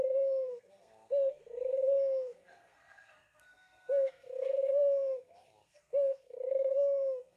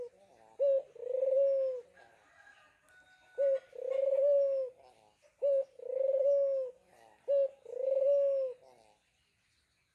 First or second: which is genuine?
second